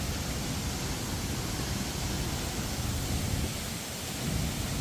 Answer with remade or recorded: recorded